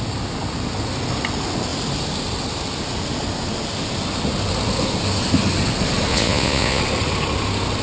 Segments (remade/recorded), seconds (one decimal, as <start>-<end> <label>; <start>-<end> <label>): 0.0-6.1 recorded; 6.1-6.8 remade; 6.8-7.8 recorded